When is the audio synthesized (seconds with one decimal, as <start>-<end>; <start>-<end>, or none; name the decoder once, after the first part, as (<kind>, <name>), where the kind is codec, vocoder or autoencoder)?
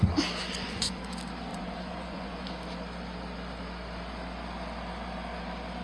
0.4-1.1 (vocoder, Vocos); 1.5-2.5